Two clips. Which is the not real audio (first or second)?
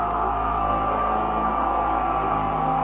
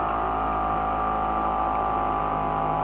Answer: first